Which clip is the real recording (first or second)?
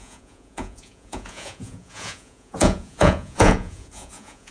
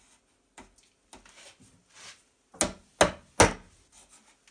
second